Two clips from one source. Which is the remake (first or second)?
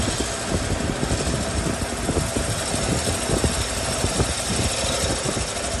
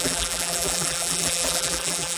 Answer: second